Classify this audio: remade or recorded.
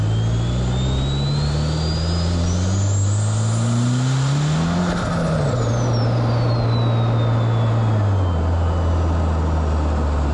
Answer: recorded